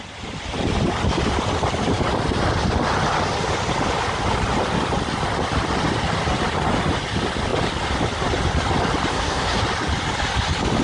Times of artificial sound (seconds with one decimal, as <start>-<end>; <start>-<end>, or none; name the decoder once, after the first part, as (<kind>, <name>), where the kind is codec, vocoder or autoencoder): 9.1-9.6 (codec, SNAC)

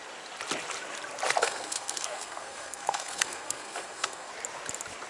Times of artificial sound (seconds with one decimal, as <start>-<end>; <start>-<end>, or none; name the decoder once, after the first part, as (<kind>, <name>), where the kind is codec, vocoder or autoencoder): 1.4-4.3 (codec, SNAC)

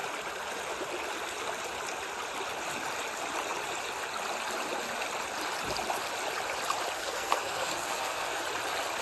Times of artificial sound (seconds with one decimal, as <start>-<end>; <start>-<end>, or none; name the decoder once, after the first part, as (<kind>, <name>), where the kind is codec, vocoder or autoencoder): 7.0-8.4 (codec, SNAC)

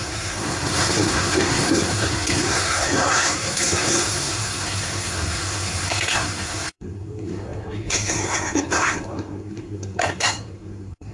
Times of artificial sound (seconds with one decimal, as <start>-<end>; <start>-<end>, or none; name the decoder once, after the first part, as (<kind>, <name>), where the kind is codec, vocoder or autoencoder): 0.0-11.1 (codec, SNAC)

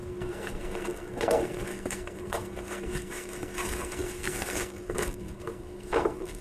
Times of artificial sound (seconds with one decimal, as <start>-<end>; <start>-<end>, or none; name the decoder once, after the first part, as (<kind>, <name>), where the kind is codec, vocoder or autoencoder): 0.0-6.4 (codec, SNAC)

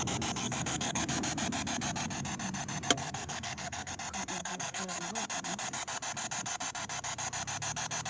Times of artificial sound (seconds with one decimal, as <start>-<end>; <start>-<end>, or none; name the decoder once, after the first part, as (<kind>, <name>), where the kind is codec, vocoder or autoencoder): 0.4-1.0 (codec, SNAC); 3.0-3.9; 4.4-5.0

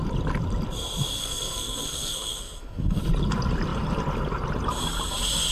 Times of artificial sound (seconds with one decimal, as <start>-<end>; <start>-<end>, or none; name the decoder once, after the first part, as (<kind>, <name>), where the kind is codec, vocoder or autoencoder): 1.2-3.0 (codec, SNAC)

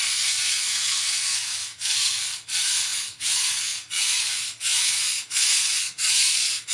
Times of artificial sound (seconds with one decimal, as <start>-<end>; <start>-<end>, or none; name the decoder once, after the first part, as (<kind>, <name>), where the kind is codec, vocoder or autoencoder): 0.0-6.7 (codec, SNAC)